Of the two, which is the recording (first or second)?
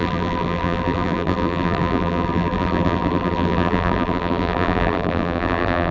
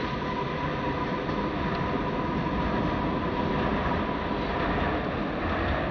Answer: second